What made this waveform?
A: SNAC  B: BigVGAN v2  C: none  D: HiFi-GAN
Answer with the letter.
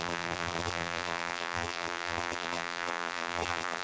B